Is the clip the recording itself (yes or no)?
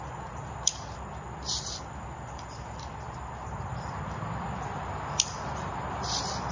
yes